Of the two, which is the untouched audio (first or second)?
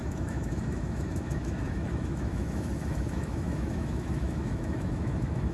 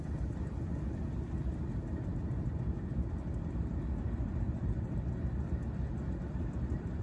second